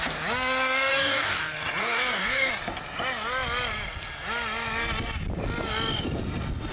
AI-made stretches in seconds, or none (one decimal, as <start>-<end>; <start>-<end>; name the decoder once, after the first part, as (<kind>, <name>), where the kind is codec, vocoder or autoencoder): 0.9-1.4 (codec, DAC); 1.8-2.5